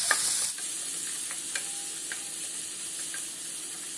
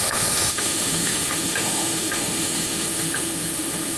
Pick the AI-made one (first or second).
second